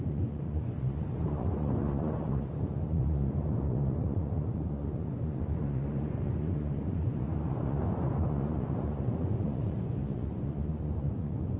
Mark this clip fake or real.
fake